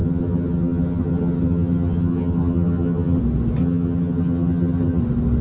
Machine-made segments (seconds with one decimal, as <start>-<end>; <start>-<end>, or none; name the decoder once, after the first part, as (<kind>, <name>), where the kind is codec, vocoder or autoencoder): 0.0-3.2 (vocoder, HiFi-GAN); 3.6-5.0